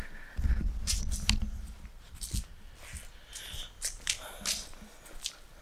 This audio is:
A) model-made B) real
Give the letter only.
B